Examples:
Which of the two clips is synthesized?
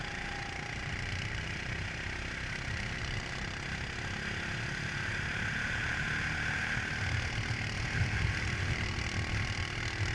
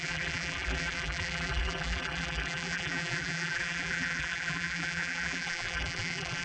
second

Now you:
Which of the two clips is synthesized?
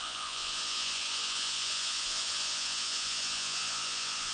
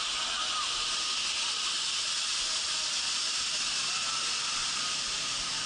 first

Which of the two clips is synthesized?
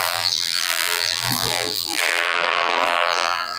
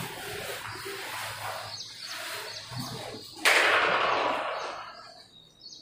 first